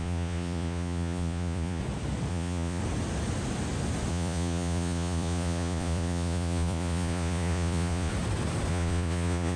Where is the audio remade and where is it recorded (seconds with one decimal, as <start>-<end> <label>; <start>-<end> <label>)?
0.0-1.8 remade; 1.8-2.3 recorded; 2.3-2.8 remade; 2.8-4.1 recorded; 4.1-8.1 remade; 8.1-8.7 recorded; 8.7-9.6 remade